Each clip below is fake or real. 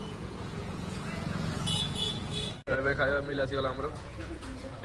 fake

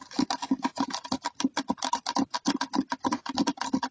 real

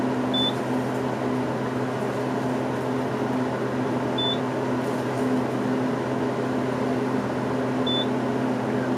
real